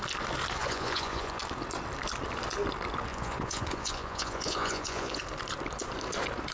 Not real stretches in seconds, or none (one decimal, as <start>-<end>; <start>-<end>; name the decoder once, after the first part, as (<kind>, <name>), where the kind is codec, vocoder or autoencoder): 0.6-1.4 (vocoder, Vocos); 3.1-5.2